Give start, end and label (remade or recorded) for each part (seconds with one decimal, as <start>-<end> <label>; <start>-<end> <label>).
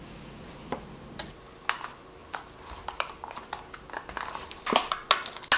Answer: 0.0-2.2 recorded; 2.2-4.9 remade; 4.9-5.6 recorded